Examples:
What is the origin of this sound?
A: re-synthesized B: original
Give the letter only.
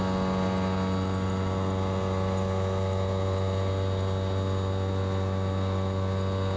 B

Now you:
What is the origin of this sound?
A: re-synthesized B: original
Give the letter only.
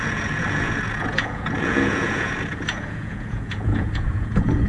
A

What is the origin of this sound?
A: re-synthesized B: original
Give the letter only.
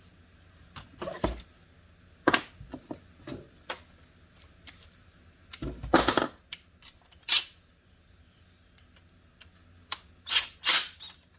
B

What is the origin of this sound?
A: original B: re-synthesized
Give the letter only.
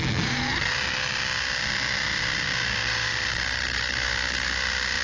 A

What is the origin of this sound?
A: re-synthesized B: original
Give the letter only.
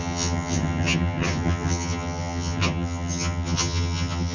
A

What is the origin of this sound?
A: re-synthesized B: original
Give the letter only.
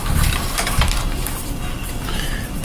A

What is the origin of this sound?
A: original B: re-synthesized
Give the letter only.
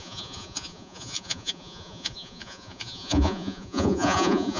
B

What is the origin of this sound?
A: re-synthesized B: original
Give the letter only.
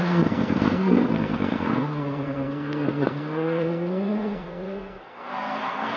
A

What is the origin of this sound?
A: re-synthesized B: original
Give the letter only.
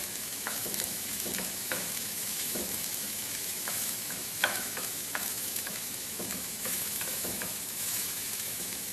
A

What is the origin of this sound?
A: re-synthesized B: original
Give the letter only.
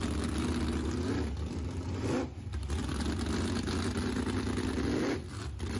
B